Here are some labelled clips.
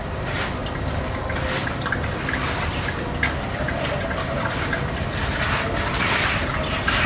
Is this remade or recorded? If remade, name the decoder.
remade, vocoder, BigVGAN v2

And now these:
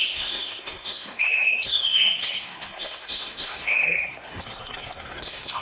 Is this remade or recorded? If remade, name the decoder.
remade, codec, SNAC